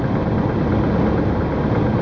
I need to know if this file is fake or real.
real